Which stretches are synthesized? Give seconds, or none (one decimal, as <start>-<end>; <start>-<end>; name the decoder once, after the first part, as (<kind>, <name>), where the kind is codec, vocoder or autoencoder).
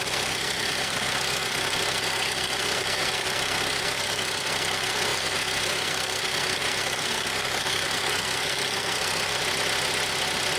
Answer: 0.0-9.4 (codec, SNAC)